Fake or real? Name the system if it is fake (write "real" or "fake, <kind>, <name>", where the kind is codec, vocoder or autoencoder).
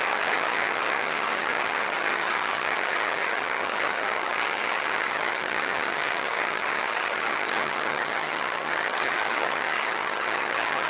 fake, vocoder, HiFi-GAN